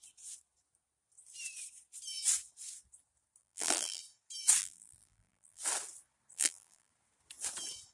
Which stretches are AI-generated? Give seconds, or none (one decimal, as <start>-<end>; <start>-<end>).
3.4-4.0; 4.6-5.6; 6.3-6.9